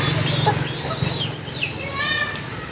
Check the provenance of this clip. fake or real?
real